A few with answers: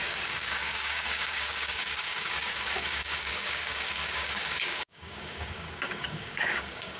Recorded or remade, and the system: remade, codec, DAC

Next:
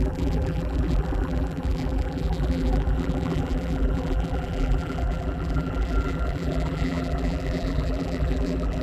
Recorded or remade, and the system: remade, vocoder, BigVGAN v2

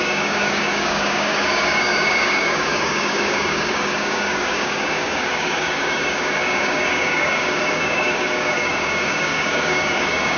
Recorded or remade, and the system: remade, codec, DAC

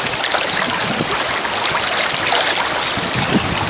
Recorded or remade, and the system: recorded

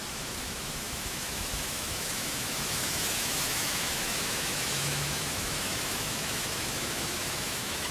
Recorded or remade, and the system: remade, autoencoder, DAC-VAE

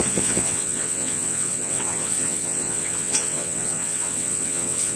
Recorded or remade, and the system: remade, vocoder, WaveNeXt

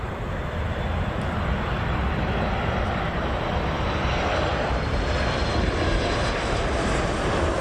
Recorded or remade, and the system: recorded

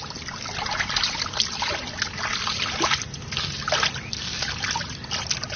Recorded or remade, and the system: recorded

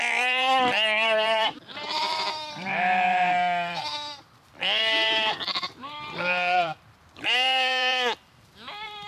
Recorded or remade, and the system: remade, vocoder, BigVGAN v2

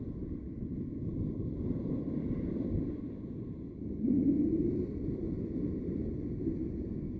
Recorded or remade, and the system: remade, vocoder, BigVGAN v2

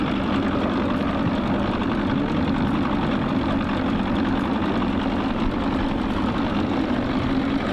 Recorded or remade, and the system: recorded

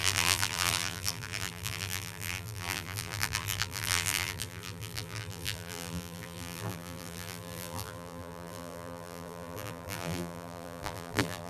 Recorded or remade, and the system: remade, vocoder, BigVGAN v2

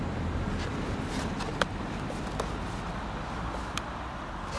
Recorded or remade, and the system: recorded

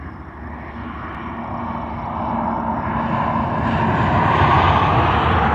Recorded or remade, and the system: recorded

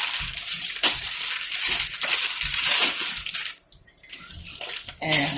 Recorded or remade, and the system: recorded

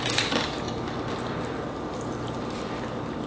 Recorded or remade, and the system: remade, vocoder, BigVGAN v2